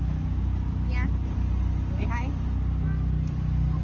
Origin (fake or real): real